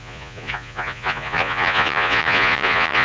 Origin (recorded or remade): remade